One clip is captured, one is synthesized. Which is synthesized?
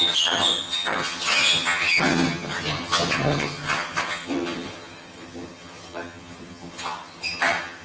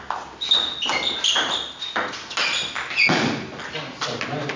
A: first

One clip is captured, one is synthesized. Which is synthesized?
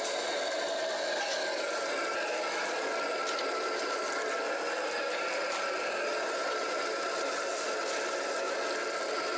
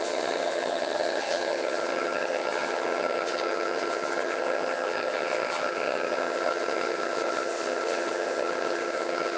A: second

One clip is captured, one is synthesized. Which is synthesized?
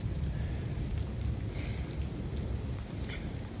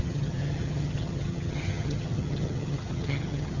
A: second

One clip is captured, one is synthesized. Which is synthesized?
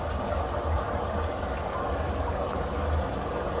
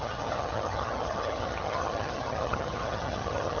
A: second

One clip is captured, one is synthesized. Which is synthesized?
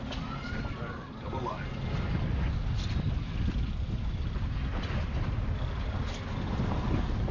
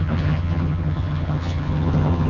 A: second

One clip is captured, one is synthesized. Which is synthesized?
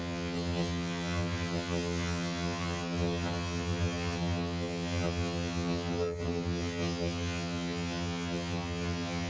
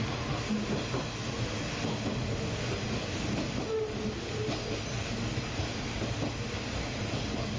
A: first